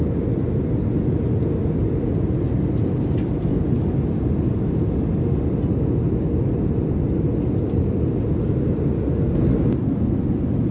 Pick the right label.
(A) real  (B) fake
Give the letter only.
A